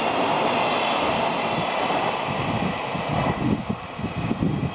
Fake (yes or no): no